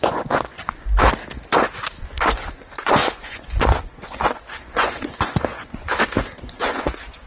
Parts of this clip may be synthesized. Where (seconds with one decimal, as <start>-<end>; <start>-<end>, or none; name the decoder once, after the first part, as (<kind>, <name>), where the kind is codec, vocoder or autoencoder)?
0.0-1.0 (vocoder, Vocos); 2.0-5.9; 6.4-7.3